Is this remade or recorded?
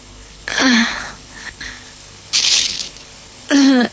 remade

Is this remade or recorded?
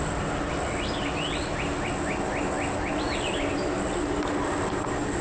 recorded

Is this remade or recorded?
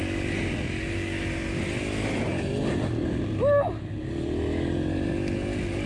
recorded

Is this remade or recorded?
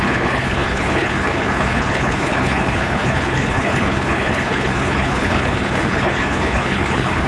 remade